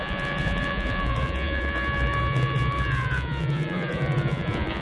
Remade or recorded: remade